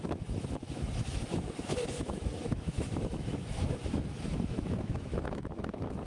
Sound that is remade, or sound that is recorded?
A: remade